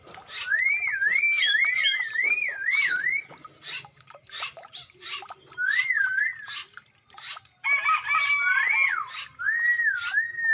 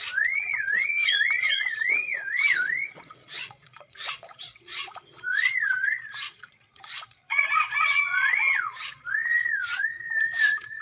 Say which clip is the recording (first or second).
first